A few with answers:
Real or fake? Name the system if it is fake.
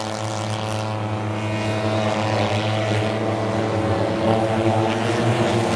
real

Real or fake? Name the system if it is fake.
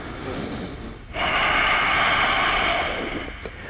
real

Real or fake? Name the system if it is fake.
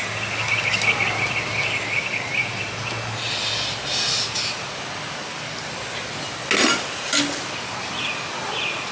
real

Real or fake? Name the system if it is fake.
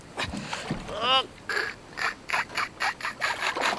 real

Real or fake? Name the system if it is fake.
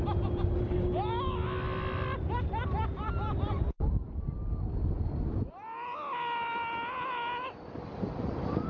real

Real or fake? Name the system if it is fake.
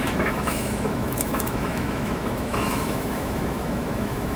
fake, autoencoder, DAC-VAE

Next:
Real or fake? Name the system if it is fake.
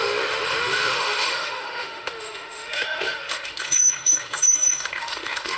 fake, autoencoder, DAC-VAE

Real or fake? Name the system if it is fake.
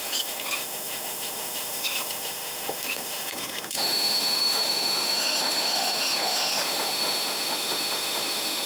fake, autoencoder, DAC-VAE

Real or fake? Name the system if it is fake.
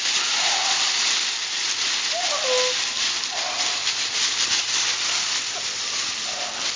real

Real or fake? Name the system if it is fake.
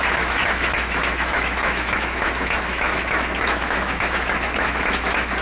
fake, autoencoder, DAC-VAE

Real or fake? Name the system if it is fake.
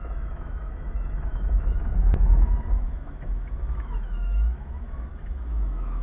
fake, autoencoder, DAC-VAE